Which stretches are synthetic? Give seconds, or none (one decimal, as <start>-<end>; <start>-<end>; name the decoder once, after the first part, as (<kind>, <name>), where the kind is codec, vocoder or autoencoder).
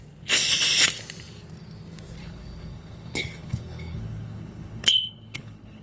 2.2-5.8 (codec, HILCodec)